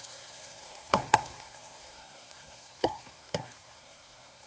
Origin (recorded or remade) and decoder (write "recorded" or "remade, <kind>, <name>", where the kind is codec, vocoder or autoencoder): remade, codec, SNAC